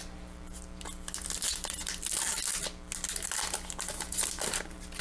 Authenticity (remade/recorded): recorded